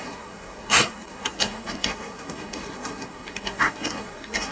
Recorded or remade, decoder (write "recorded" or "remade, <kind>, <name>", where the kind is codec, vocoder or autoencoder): remade, codec, SNAC